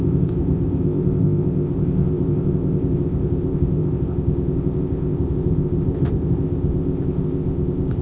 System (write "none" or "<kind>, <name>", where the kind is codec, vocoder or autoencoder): codec, ZipCodec